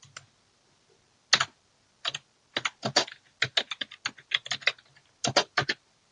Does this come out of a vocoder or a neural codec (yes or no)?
no